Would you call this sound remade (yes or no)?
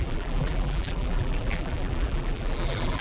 yes